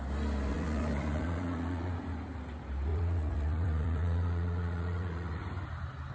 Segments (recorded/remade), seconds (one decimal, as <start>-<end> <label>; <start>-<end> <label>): 0.0-0.5 recorded; 0.5-1.9 remade; 1.9-2.9 recorded; 2.9-5.4 remade; 5.4-6.1 recorded